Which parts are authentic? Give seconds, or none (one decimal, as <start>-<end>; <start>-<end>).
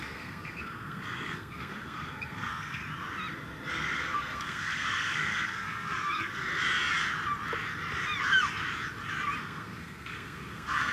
2.8-3.7; 6.5-9.4